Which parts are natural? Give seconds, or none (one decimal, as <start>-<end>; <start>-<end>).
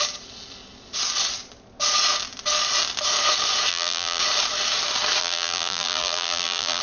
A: 0.0-3.7; 4.2-5.2